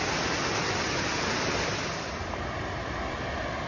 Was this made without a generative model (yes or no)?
yes